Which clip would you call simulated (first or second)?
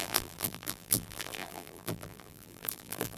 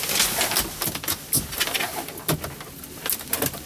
first